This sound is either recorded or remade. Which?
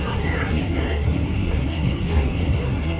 remade